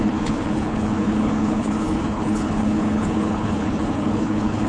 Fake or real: fake